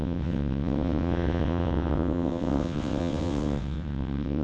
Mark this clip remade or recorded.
remade